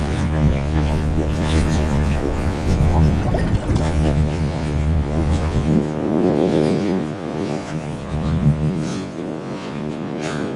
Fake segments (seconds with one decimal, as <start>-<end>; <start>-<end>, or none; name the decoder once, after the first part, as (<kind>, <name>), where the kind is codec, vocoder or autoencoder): 0.0-3.2 (vocoder, Vocos); 3.8-10.6